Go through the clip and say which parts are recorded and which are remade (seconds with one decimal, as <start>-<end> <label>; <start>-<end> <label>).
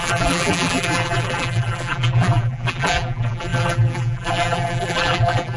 0.0-5.6 remade